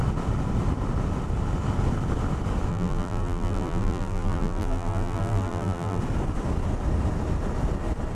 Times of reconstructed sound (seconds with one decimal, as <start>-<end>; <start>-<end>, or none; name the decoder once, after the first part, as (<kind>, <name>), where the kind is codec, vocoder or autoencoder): 2.7-6.0 (vocoder, BigVGAN v2)

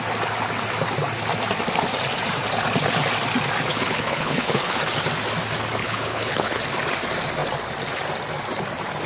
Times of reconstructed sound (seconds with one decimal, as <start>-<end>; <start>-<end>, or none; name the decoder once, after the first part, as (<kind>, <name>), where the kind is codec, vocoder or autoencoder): 3.7-4.8 (codec, HILCodec); 5.8-6.6

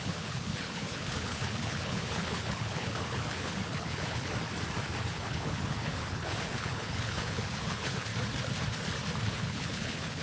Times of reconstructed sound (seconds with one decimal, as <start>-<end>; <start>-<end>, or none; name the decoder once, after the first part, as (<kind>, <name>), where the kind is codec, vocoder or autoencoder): 0.0-4.3 (codec, HILCodec); 5.1-8.1; 9.3-10.2

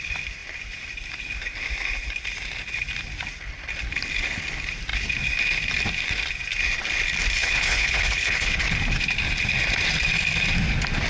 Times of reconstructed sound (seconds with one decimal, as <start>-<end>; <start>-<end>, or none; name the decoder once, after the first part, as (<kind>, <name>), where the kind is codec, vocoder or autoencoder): 7.4-8.6 (codec, HILCodec)

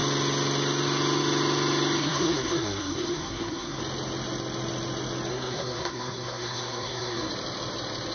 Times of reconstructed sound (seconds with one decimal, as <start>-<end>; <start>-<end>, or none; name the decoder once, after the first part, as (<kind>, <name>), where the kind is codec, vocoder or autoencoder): 2.0-3.8 (codec, SNAC); 5.3-7.3

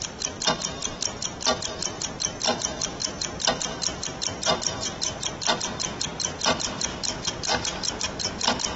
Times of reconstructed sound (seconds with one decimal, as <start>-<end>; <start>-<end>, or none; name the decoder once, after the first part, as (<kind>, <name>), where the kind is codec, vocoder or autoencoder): 0.8-1.9 (vocoder, BigVGAN v2); 3.7-5.6; 6.9-7.9

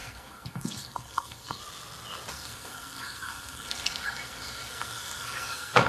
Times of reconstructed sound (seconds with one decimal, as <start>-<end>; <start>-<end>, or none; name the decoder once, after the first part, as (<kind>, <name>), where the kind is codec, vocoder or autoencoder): 0.0-1.6 (codec, SNAC); 2.3-5.9

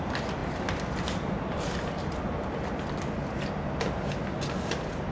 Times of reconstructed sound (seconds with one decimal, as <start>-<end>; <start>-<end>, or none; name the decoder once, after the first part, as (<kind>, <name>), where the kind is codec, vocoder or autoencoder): none